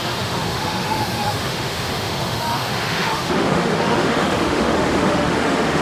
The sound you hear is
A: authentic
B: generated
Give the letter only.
B